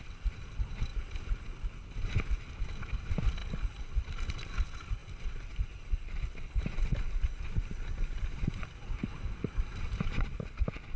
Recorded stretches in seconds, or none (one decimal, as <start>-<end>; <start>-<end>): 0.0-11.0